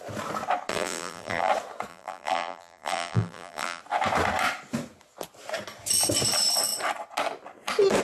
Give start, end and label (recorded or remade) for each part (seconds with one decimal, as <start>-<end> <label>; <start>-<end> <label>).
0.0-0.7 recorded; 0.7-1.5 remade; 1.5-1.9 recorded; 1.9-3.8 remade; 3.8-8.0 recorded